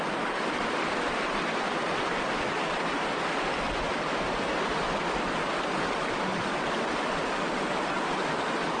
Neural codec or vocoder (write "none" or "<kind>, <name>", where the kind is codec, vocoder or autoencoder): none